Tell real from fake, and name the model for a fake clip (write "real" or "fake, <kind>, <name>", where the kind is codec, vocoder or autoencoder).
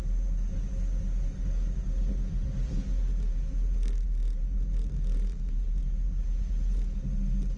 real